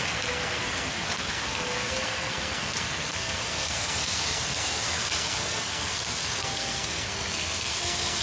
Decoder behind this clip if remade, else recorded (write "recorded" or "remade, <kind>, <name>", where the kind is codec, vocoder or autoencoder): remade, codec, SNAC